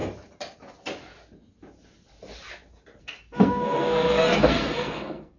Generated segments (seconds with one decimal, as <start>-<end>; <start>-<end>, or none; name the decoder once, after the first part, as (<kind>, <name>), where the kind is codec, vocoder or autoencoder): 3.0-5.4 (codec, SNAC)